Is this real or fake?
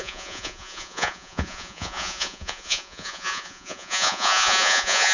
fake